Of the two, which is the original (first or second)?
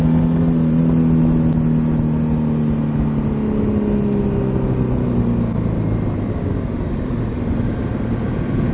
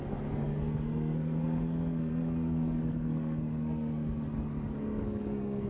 first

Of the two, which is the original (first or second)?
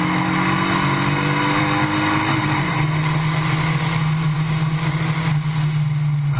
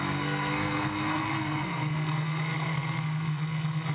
first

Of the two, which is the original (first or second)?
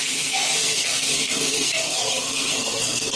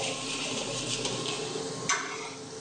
second